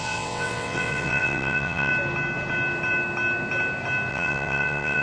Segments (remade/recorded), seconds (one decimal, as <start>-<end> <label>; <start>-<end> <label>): 0.0-1.9 remade; 1.9-4.1 recorded; 4.1-5.0 remade